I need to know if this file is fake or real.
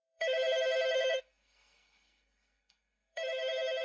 fake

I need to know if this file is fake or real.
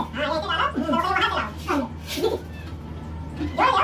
real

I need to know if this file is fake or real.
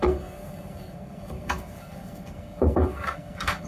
fake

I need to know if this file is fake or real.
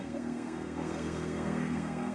fake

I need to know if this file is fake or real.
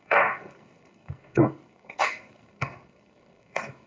fake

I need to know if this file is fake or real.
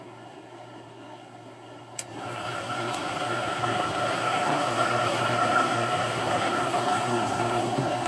fake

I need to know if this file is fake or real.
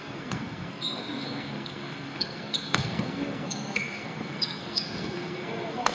fake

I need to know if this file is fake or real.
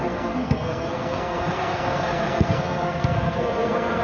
fake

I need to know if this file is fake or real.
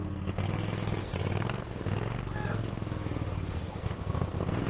fake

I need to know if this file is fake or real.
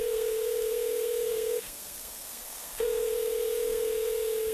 fake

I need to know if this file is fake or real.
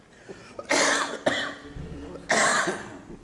real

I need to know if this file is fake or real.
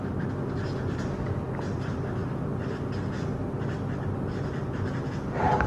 real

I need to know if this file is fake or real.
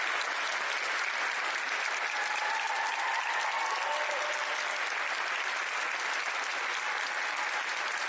real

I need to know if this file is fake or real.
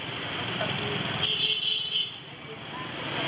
real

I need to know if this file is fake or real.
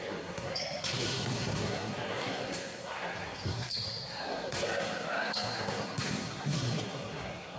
fake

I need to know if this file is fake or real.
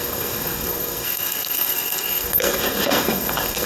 fake